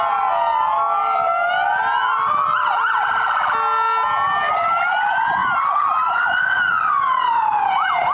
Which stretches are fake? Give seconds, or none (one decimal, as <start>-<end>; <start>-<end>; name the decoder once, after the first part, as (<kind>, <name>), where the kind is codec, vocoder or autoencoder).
none